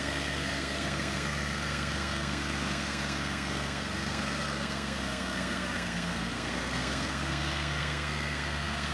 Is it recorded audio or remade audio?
remade